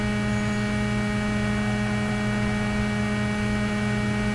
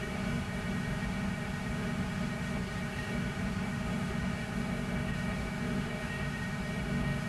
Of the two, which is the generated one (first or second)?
second